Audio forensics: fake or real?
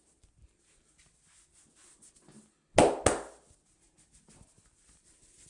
real